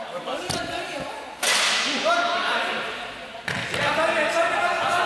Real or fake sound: real